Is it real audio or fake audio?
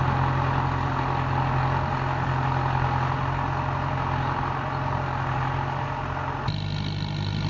real